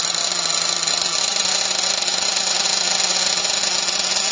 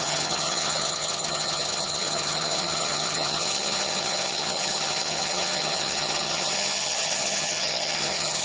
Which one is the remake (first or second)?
second